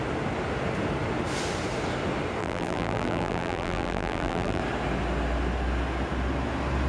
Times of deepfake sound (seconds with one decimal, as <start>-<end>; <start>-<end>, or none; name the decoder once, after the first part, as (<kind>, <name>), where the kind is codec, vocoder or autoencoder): 2.4-4.6 (vocoder, BigVGAN v2)